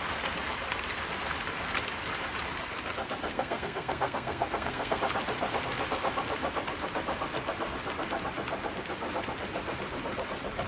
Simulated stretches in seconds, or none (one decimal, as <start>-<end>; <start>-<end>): 3.3-5.0